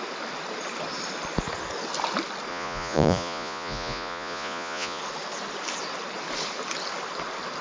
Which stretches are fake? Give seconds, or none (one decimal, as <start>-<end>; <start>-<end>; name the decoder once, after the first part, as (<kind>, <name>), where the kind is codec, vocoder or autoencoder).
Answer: 2.5-5.0 (vocoder, Vocos)